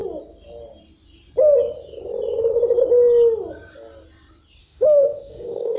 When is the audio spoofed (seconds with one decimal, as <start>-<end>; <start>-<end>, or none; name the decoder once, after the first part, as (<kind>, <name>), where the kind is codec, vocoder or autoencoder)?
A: 4.6-5.8 (autoencoder, DAC-VAE)